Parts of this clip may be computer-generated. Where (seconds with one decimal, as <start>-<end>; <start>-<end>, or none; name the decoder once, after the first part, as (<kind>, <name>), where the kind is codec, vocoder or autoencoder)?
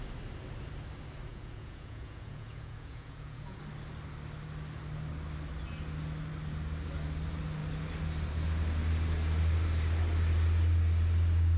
1.3-3.6 (vocoder, Vocos)